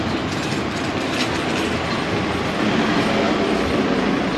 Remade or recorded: recorded